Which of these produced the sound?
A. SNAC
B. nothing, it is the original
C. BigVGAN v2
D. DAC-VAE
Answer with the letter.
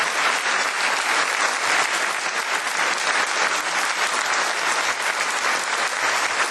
B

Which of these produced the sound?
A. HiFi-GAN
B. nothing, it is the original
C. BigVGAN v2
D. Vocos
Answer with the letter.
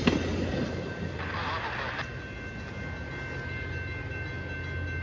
B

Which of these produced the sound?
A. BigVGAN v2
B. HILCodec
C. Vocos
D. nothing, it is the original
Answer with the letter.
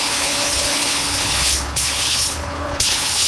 B